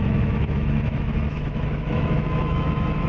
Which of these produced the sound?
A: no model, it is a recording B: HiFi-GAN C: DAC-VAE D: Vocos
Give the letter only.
C